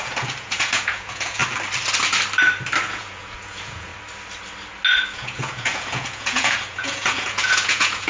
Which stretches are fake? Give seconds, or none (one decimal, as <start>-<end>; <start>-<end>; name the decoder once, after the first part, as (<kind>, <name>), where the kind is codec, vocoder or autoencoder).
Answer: 0.0-1.4 (vocoder, Vocos); 2.8-3.9; 5.1-8.1